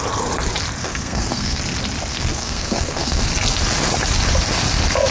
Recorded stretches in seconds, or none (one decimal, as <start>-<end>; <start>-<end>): 0.0-0.8; 1.6-2.1; 3.2-5.1